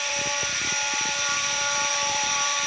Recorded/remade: remade